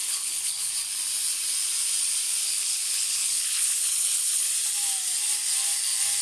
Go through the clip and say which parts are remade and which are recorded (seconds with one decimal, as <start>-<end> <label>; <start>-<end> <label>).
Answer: 0.0-0.7 remade; 0.7-2.4 recorded; 2.4-4.5 remade; 4.5-6.2 recorded